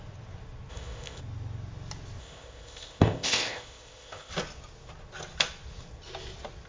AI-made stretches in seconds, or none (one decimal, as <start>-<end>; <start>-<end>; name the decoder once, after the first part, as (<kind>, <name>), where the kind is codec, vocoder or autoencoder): 0.7-1.2 (codec, ZipCodec); 2.2-4.3

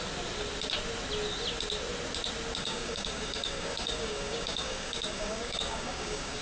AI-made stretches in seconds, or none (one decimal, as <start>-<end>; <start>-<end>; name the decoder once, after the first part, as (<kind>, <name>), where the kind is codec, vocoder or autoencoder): 2.6-6.4 (codec, DAC)

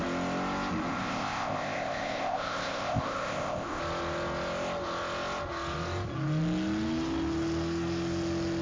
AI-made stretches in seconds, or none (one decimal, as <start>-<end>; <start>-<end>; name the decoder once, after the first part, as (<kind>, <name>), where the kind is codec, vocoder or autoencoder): 0.9-3.8 (codec, ZipCodec)

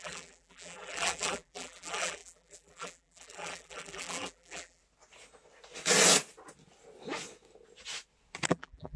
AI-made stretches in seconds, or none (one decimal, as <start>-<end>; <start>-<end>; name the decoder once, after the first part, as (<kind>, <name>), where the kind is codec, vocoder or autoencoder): 0.0-4.8 (vocoder, BigVGAN v2); 8.5-9.0

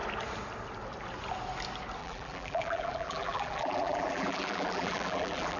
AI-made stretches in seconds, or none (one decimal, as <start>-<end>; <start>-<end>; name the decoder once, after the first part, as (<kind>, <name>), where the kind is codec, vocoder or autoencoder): 2.0-5.6 (vocoder, BigVGAN v2)

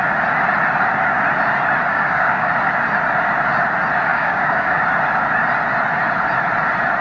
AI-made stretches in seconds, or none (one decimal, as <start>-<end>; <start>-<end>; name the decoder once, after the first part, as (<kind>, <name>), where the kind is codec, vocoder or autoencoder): 1.9-2.5 (codec, DAC); 4.1-4.8

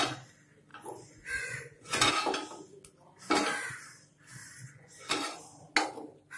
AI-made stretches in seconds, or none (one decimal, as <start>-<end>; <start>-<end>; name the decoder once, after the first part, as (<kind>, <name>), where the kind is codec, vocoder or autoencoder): 0.7-2.1 (vocoder, Vocos); 4.4-5.4

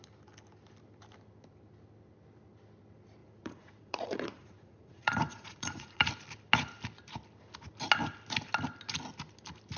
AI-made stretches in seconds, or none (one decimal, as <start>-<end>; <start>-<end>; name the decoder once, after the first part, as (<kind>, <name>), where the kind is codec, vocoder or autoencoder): 3.2-6.1 (vocoder, Vocos)